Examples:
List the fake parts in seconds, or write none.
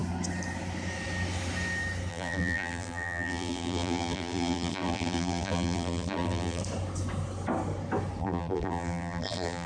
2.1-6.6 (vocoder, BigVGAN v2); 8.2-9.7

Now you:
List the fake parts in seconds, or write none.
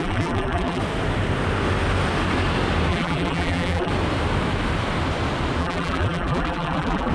0.0-0.8 (vocoder, BigVGAN v2); 2.9-3.9; 5.6-7.1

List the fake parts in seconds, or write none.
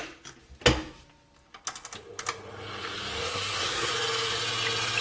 3.2-3.9 (codec, SNAC)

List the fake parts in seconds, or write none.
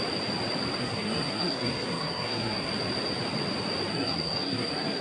0.8-2.7 (codec, SNAC); 3.9-5.0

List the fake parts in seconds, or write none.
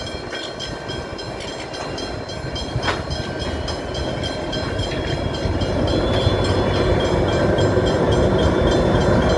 none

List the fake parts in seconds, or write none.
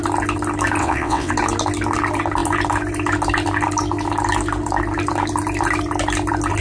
0.8-1.3 (vocoder, WaveNeXt)